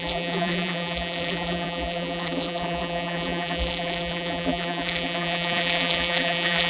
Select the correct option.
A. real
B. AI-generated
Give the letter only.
B